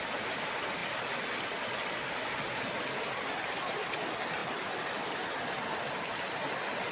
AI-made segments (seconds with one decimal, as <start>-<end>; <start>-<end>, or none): 4.4-5.1